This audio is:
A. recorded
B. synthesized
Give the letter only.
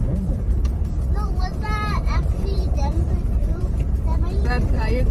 B